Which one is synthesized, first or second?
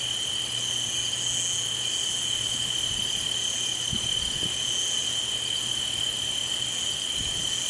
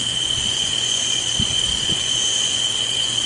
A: second